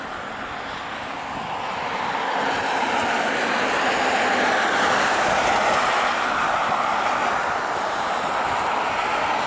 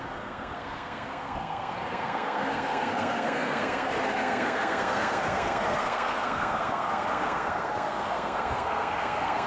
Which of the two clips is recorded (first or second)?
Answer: first